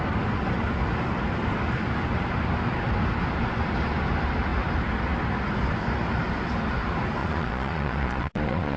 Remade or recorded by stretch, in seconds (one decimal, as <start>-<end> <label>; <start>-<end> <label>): 0.0-7.2 recorded; 7.2-8.8 remade